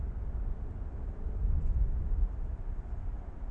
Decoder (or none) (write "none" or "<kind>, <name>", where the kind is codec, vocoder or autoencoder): none